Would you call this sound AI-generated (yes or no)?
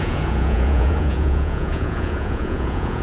yes